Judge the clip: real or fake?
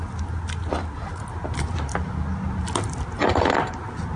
real